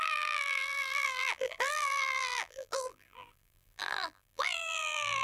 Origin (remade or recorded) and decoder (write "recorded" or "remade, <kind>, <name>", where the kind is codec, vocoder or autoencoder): remade, vocoder, BigVGAN v2